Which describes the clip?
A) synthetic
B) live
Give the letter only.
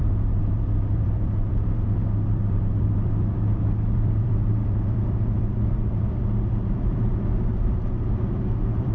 A